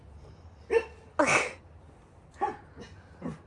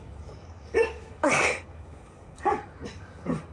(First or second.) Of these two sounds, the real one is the first